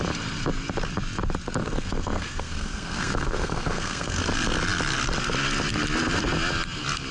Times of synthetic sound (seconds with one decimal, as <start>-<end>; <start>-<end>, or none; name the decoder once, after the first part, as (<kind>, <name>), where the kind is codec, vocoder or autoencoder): 1.6-4.2 (codec, SNAC)

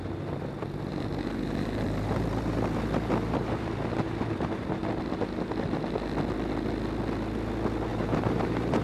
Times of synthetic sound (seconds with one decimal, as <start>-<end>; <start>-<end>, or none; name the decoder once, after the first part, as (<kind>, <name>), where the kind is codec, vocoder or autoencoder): 0.9-4.8 (vocoder, BigVGAN v2); 7.9-8.8

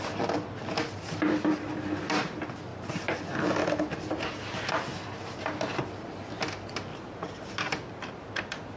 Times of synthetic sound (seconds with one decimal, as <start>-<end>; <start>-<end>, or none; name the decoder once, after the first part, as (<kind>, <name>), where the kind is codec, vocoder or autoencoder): 6.9-7.5 (vocoder, BigVGAN v2)

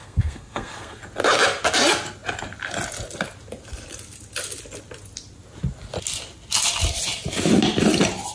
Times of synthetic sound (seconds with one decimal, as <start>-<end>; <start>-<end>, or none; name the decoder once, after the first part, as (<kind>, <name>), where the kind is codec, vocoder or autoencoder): 0.0-1.0 (codec, SNAC)

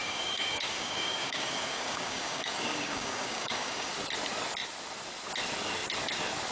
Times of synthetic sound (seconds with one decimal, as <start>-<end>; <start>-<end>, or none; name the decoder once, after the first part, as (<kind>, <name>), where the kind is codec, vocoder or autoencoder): 0.0-3.9 (codec, DAC)

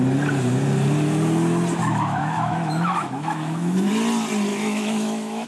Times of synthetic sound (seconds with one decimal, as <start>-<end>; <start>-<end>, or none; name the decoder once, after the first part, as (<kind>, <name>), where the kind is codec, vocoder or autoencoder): 1.8-3.9 (autoencoder, DAC-VAE); 4.5-5.5

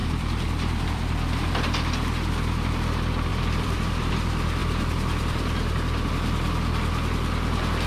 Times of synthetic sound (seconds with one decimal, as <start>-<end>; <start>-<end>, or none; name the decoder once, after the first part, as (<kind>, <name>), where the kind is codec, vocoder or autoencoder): 0.0-1.5 (vocoder, BigVGAN v2); 3.3-4.1; 4.6-6.1